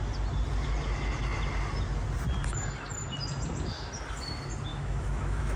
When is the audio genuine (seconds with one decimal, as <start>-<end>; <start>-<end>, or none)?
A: 0.0-4.7